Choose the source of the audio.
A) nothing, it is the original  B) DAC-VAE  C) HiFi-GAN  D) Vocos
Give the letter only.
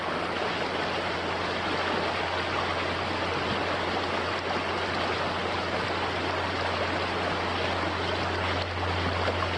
A